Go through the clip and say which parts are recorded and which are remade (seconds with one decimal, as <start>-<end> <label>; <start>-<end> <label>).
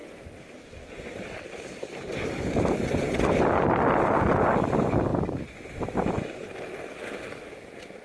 0.0-8.0 recorded